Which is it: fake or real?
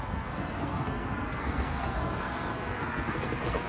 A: fake